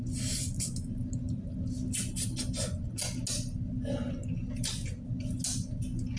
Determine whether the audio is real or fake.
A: real